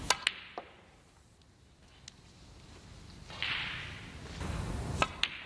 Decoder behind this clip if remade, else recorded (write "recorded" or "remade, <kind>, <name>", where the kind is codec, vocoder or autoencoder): recorded